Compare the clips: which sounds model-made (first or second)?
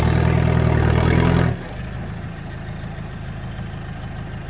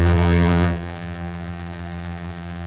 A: second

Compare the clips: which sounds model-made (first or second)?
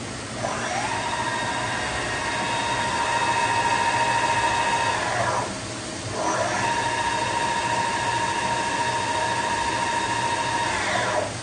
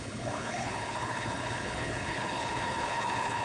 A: second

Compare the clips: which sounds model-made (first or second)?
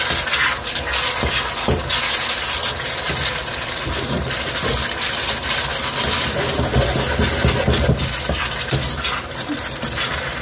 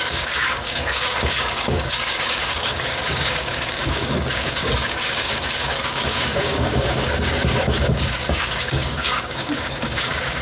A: second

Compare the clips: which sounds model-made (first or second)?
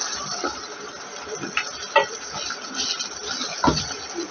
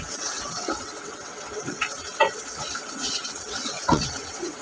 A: second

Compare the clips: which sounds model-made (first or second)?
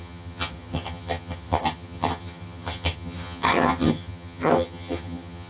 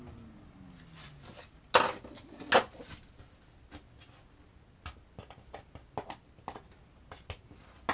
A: first